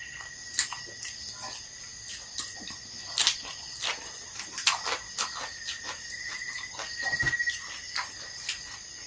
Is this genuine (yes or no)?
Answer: yes